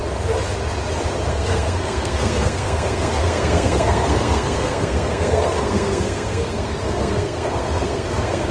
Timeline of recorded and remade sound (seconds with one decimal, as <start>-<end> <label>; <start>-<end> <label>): 0.0-1.3 recorded; 1.3-8.5 remade